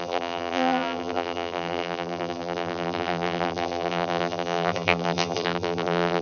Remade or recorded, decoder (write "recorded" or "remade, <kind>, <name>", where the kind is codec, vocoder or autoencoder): remade, vocoder, BigVGAN v2